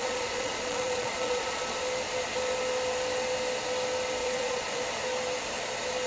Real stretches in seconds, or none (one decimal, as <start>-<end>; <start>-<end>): 1.6-4.2; 4.8-6.1